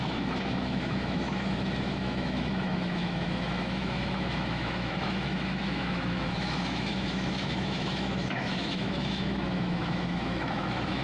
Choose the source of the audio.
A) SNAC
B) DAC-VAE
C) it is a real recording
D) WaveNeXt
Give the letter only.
B